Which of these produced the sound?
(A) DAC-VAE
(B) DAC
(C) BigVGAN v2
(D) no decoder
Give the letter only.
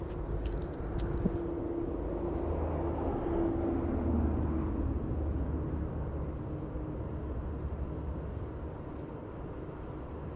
D